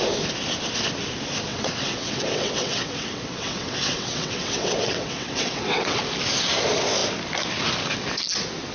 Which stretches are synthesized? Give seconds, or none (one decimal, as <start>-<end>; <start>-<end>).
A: 1.5-6.0